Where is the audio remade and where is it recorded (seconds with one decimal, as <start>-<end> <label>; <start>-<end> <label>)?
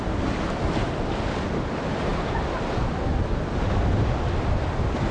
0.0-5.1 recorded